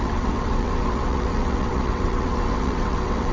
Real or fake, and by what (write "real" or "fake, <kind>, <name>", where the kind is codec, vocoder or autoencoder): fake, vocoder, WaveNeXt